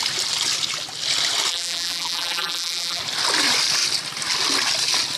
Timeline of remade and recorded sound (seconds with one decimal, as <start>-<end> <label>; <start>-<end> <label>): 0.0-1.5 recorded; 1.5-3.0 remade; 3.0-5.2 recorded